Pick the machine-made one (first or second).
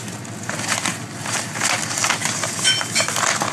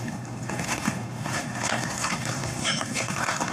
second